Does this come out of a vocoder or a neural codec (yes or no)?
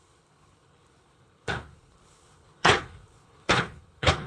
yes